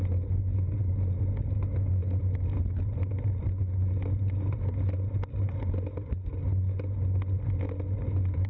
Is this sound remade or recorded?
recorded